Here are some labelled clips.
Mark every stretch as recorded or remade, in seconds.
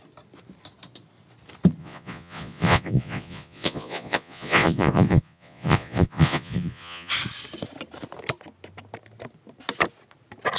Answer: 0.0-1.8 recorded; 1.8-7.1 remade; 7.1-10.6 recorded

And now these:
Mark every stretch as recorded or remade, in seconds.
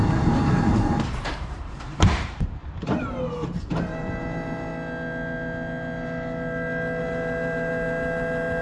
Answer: 0.0-2.6 remade; 2.6-3.2 recorded; 3.2-4.7 remade; 4.7-7.0 recorded; 7.0-8.6 remade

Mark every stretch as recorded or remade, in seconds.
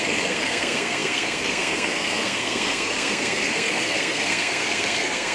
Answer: 0.0-5.3 remade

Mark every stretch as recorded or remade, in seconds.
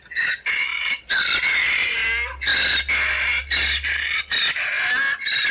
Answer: 0.0-0.7 recorded; 0.7-1.9 remade; 1.9-5.5 recorded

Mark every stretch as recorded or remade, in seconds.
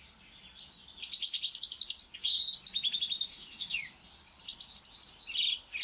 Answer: 0.0-3.3 recorded; 3.3-3.8 remade; 3.8-5.8 recorded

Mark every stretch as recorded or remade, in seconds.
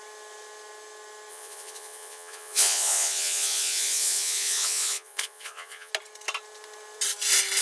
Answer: 0.0-1.3 recorded; 1.3-5.9 remade; 5.9-7.6 recorded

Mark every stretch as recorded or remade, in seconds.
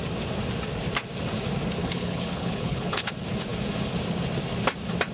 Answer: 0.0-1.8 recorded; 1.8-3.1 remade; 3.1-5.1 recorded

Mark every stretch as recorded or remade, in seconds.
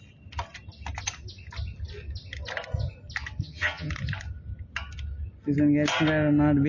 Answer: 0.0-3.4 recorded; 3.4-3.9 remade; 3.9-6.7 recorded